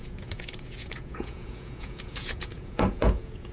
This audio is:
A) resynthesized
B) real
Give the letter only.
A